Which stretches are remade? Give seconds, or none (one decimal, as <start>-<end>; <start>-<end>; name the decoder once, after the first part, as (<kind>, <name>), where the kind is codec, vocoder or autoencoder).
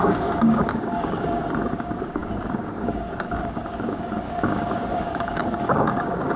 0.0-6.4 (codec, DAC)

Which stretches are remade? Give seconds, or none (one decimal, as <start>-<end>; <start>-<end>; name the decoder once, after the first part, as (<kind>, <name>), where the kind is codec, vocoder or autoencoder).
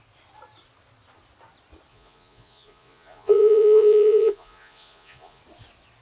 1.9-5.4 (vocoder, Vocos)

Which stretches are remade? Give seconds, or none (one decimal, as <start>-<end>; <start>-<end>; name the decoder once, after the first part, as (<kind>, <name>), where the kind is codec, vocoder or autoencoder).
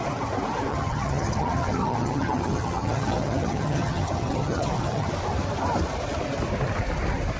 0.7-5.1 (vocoder, HiFi-GAN)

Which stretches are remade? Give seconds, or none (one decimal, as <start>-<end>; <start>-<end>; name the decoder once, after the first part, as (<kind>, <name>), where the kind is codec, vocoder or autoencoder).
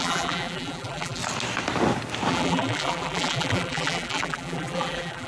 0.0-1.2 (vocoder, BigVGAN v2); 2.3-5.3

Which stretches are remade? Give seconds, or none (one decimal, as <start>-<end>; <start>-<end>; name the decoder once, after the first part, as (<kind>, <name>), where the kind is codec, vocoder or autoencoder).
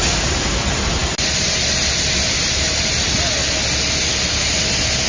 none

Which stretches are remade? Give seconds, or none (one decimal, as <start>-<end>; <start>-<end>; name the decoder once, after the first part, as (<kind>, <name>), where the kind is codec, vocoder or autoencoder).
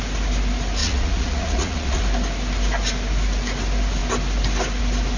0.8-2.0 (vocoder, Vocos)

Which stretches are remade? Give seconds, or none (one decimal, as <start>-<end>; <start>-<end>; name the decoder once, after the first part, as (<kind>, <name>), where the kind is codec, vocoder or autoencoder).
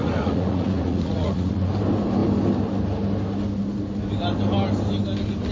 0.0-1.7 (vocoder, Vocos)